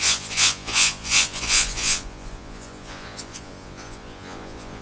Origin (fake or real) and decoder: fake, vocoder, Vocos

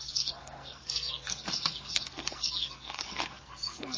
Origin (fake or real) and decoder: fake, codec, SNAC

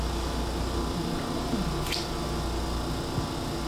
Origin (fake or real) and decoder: real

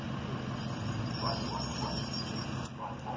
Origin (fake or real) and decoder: real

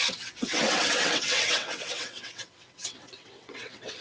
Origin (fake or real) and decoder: fake, vocoder, WaveNeXt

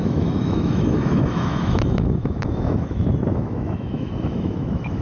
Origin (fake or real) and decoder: fake, autoencoder, DAC-VAE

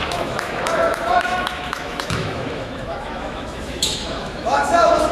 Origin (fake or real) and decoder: fake, autoencoder, DAC-VAE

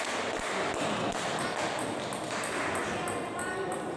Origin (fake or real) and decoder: real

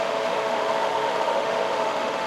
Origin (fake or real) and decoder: fake, autoencoder, DAC-VAE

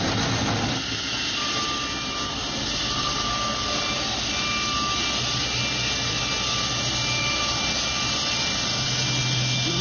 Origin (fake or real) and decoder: real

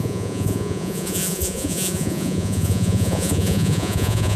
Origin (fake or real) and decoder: fake, vocoder, Vocos